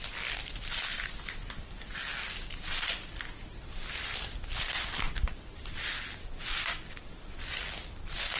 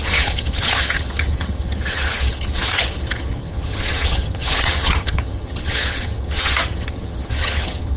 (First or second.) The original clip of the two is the first